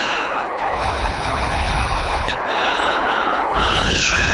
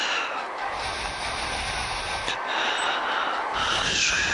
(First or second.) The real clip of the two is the second